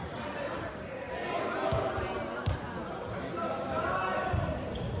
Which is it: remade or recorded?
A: recorded